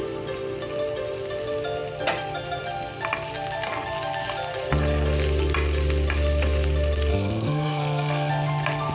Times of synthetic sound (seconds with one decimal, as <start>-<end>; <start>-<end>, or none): 7.1-8.3